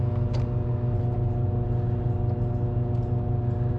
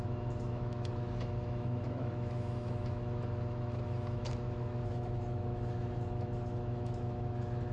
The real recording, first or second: first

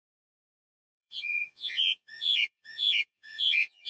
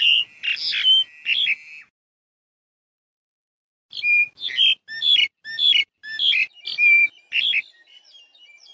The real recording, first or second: second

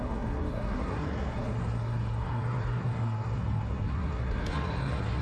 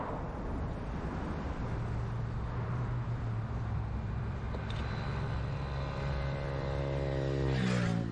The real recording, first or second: second